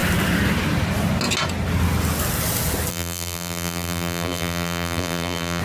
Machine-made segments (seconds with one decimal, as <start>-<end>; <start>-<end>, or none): 2.9-5.6